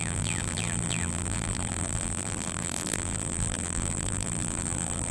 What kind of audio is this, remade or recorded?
remade